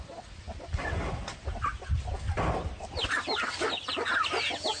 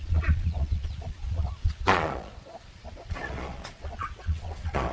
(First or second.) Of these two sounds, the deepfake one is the second